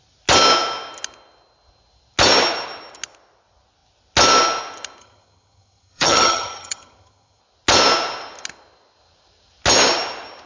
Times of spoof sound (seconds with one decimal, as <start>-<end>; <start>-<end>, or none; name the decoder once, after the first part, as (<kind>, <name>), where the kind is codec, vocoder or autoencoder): 5.0-7.4 (vocoder, HiFi-GAN)

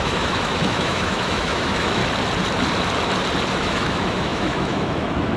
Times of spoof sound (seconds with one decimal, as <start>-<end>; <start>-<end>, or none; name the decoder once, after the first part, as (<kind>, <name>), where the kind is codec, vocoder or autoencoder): 0.0-2.0 (autoencoder, DAC-VAE); 3.5-5.4